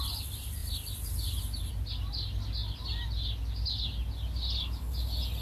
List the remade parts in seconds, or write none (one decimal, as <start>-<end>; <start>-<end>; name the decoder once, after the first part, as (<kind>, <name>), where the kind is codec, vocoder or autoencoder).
none